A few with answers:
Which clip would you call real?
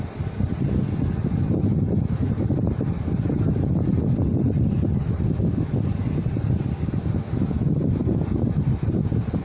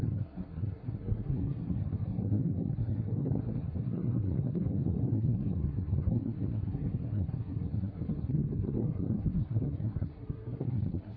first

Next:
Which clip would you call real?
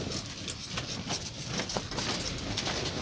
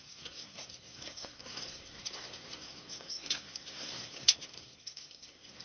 first